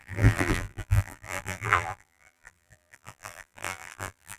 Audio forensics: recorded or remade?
remade